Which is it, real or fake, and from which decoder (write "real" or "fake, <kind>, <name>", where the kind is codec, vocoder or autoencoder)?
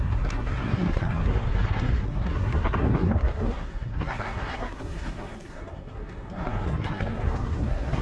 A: fake, codec, SNAC